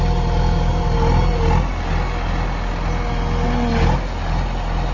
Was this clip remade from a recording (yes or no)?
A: no